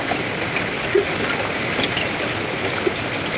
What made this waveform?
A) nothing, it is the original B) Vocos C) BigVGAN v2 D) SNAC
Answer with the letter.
A